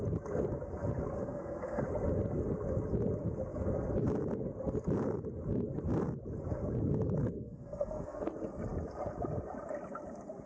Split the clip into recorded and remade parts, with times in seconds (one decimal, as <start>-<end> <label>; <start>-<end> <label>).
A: 0.0-1.2 recorded; 1.2-1.8 remade; 1.8-7.2 recorded; 7.2-8.2 remade; 8.2-10.5 recorded